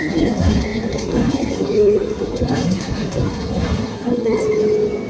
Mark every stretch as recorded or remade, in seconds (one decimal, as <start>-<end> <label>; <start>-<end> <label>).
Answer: 0.0-4.4 remade; 4.4-5.1 recorded